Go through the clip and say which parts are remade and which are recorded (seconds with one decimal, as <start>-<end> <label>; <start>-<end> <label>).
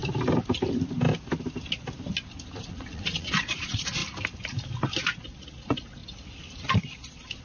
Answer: 0.0-2.7 recorded; 2.7-4.0 remade; 4.0-5.0 recorded; 5.0-6.0 remade; 6.0-6.8 recorded; 6.8-7.4 remade